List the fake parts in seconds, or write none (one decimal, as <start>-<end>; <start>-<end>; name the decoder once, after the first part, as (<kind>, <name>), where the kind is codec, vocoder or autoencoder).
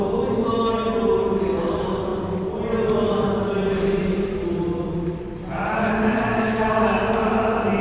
none